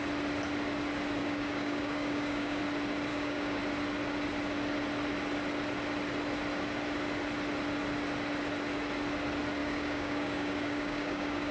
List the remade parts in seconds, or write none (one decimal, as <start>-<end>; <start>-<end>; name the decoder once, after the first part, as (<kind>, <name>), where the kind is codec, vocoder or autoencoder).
1.2-2.6 (codec, DAC); 3.1-3.6; 9.6-11.5